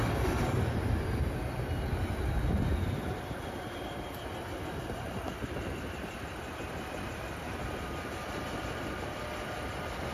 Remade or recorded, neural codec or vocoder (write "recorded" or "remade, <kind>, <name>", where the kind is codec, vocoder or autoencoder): recorded